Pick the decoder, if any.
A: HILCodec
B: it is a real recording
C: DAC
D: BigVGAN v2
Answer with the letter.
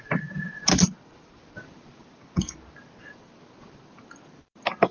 B